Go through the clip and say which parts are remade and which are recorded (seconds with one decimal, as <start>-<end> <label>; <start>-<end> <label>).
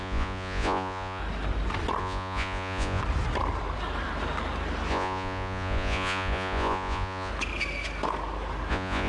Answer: 0.0-1.2 remade; 1.2-2.0 recorded; 2.0-3.0 remade; 3.0-4.9 recorded; 4.9-7.3 remade; 7.3-8.7 recorded; 8.7-9.1 remade